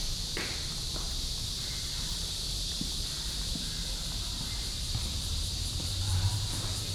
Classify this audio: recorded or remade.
remade